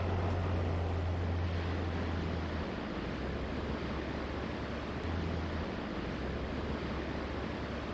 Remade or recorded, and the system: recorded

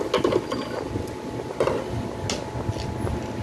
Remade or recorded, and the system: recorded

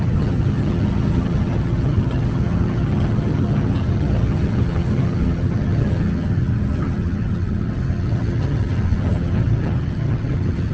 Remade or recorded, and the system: remade, vocoder, HiFi-GAN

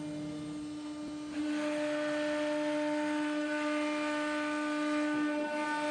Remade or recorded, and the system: recorded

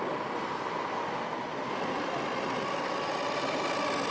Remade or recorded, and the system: recorded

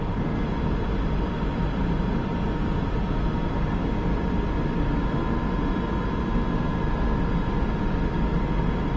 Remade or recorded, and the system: recorded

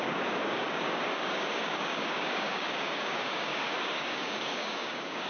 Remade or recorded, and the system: remade, codec, DAC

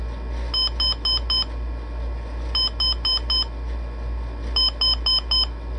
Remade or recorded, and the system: recorded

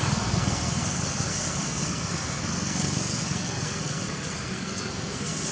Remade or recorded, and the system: remade, codec, SNAC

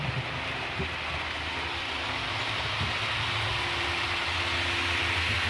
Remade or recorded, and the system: recorded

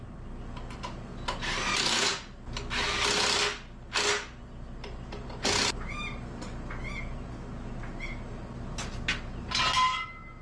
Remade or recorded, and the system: recorded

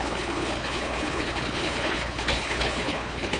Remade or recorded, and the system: remade, codec, HILCodec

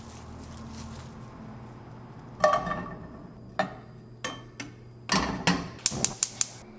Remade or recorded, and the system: recorded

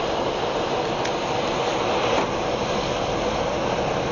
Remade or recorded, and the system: recorded